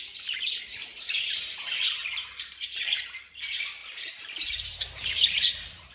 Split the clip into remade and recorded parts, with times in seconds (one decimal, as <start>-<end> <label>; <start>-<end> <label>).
0.0-5.9 remade